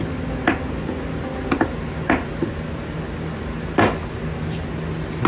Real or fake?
real